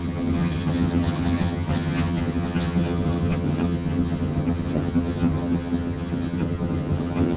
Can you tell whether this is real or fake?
fake